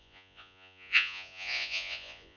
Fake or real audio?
fake